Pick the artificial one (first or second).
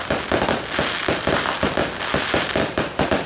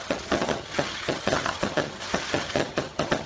second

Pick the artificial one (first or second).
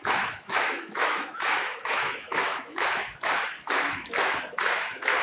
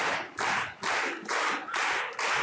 first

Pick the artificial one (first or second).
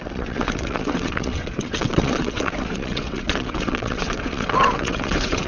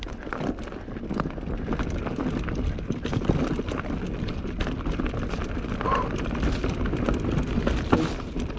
first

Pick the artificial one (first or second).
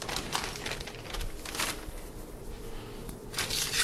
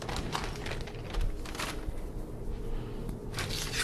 first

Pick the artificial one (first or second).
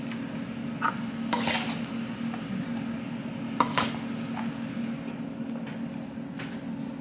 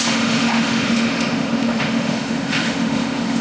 second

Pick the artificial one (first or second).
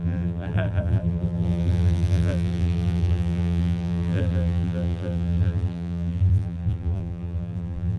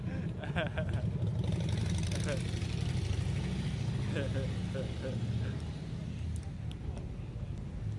first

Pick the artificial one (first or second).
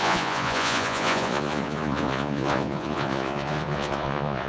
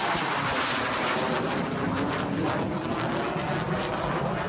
first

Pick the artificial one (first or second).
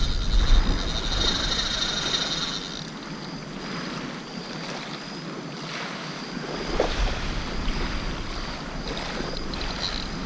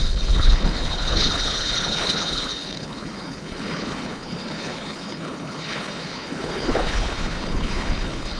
second